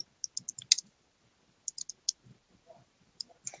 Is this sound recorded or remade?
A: recorded